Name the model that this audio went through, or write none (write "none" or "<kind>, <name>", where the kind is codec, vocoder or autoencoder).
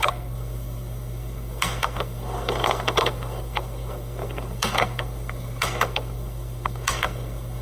codec, SNAC